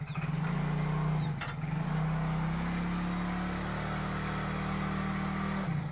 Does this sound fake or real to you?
real